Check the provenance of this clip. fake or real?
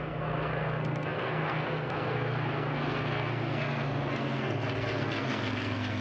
fake